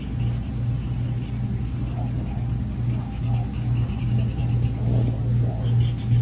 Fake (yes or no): no